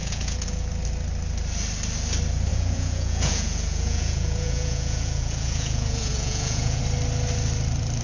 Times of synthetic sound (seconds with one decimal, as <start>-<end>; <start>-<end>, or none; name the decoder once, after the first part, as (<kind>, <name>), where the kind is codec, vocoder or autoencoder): 0.0-0.7 (vocoder, Vocos); 2.5-6.8